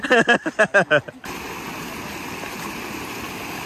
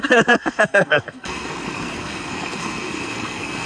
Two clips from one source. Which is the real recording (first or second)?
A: first